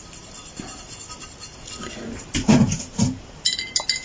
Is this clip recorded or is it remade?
recorded